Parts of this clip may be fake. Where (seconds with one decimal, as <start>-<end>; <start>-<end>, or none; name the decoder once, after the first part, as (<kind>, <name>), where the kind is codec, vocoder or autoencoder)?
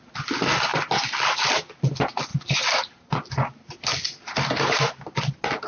none